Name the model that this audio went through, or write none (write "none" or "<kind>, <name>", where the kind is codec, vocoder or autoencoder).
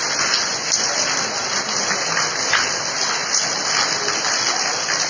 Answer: none